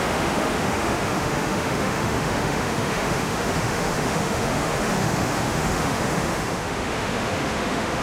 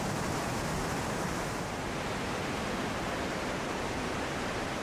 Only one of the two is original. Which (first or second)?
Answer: second